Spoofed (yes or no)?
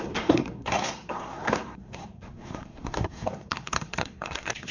yes